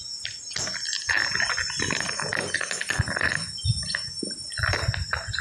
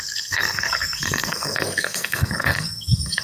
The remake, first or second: second